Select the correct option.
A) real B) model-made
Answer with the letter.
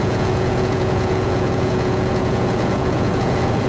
B